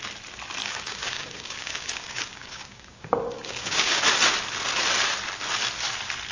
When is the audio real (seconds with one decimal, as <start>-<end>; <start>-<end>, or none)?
0.0-0.6; 4.0-6.3

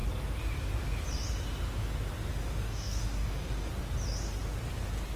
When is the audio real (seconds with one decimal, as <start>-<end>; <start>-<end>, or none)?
0.0-2.3; 3.7-5.2

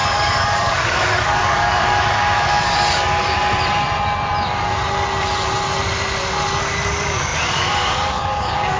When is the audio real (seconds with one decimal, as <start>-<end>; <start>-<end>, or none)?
3.4-6.6

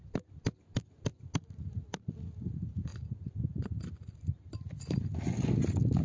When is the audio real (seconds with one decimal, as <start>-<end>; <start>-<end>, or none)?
0.0-6.0

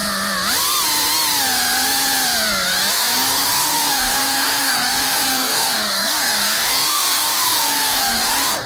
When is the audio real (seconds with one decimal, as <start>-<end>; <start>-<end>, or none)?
0.0-2.9

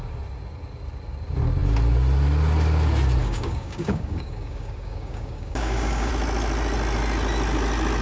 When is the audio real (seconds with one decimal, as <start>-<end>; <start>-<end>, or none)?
0.0-3.2; 6.1-8.0

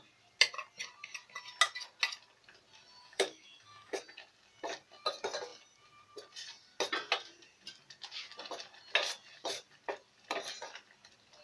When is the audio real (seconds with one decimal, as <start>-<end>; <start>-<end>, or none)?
0.0-3.0; 4.0-11.4

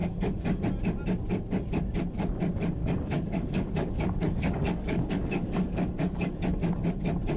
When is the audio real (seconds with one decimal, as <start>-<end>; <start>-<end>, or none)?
0.6-2.8; 6.6-7.4